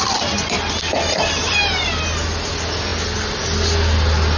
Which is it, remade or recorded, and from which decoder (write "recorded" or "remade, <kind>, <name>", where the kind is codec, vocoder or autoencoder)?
recorded